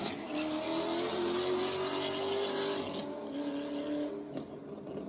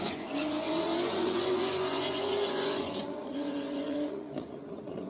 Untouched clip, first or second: first